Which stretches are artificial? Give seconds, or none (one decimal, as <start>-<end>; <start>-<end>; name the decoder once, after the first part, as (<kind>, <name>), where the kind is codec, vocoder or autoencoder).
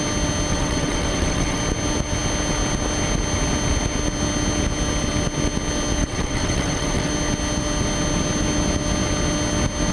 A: 0.5-1.6 (vocoder, WaveNeXt); 6.0-7.1